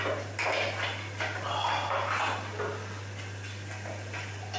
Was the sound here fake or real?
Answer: real